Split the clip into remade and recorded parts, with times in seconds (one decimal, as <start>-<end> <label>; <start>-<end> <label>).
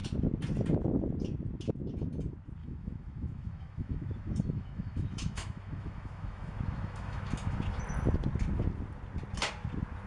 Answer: 0.0-2.6 recorded; 2.6-7.8 remade; 7.8-10.1 recorded